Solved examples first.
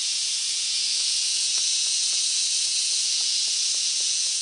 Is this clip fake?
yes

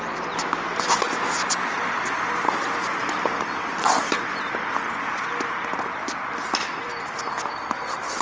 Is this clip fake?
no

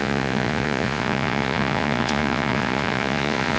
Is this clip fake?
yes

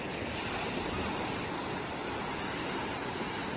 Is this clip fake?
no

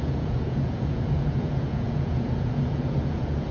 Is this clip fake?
yes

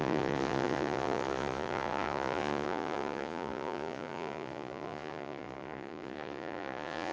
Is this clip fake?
yes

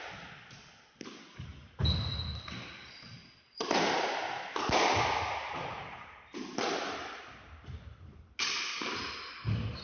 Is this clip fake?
no